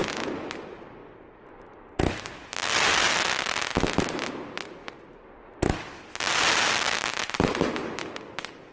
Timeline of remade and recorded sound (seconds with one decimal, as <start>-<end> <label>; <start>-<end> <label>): 0.0-8.7 recorded